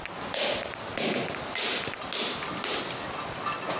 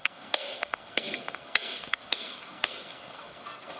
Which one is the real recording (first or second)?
first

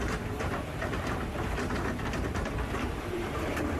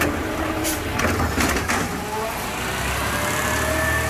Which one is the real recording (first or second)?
second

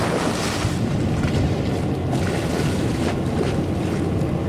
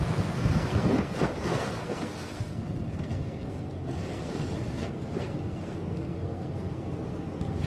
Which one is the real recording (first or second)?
first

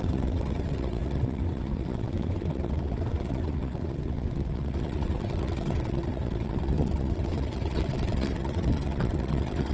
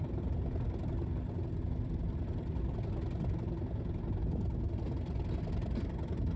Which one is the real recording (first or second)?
second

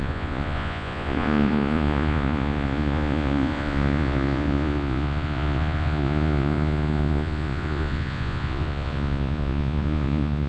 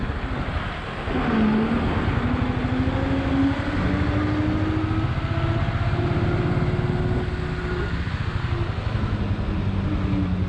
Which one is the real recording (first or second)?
second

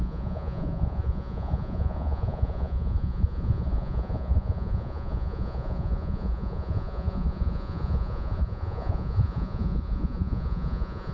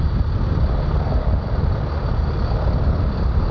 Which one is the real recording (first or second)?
second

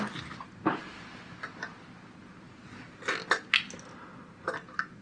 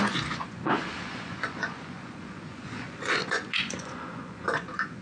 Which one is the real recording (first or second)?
first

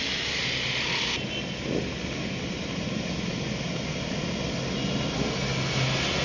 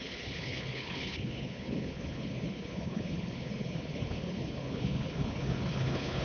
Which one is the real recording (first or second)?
first